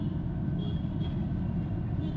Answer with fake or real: real